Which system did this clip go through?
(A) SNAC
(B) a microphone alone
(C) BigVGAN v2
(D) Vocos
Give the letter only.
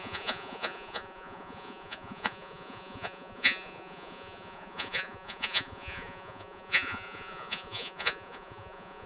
D